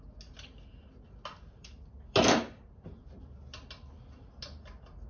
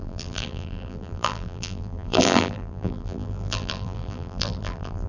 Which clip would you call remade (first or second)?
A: second